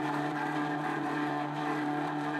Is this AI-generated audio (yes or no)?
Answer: yes